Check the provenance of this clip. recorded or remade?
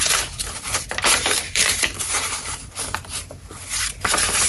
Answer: remade